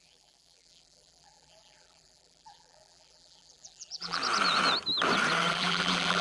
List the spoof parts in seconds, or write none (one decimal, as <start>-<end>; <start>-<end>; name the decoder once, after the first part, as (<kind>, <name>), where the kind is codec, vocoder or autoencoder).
0.0-4.2 (vocoder, BigVGAN v2); 5.5-6.2